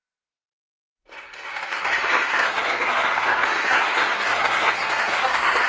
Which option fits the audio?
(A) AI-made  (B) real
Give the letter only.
A